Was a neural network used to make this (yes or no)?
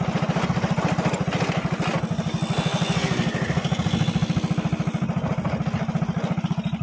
no